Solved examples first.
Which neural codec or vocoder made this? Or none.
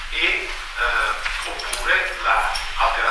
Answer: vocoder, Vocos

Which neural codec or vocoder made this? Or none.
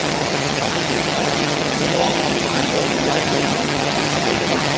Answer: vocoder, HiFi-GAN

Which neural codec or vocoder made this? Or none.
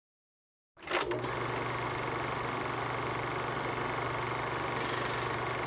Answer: none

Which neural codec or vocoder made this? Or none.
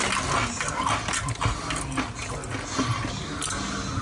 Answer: none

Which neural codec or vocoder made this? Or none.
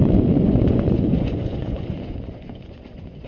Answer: vocoder, Vocos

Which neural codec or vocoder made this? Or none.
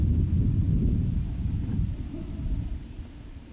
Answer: vocoder, BigVGAN v2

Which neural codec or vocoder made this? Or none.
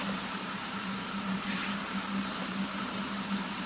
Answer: vocoder, BigVGAN v2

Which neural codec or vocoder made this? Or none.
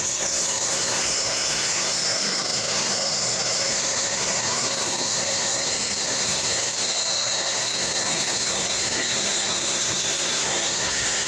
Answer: codec, SNAC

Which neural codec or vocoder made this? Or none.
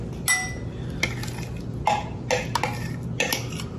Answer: none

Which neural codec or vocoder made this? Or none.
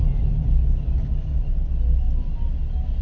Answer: none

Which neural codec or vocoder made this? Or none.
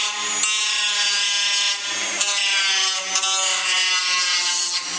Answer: none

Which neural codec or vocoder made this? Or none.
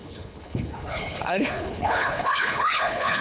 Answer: codec, HILCodec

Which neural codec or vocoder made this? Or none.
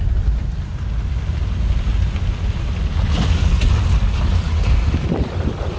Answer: none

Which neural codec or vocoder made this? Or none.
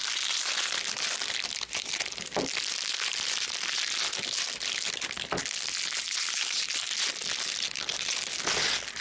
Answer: none